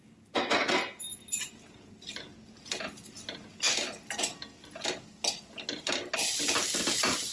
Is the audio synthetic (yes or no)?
no